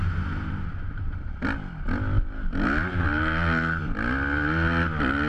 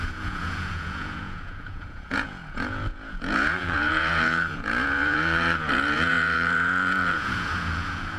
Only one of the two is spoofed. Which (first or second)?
second